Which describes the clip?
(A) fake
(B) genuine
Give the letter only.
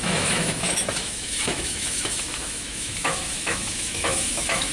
A